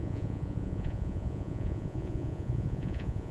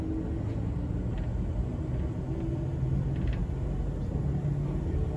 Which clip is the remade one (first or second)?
first